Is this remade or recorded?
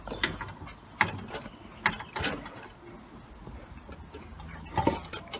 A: recorded